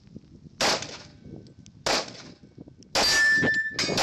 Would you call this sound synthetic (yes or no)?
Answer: no